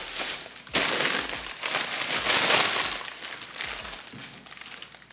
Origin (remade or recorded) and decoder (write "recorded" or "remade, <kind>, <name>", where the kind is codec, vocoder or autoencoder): recorded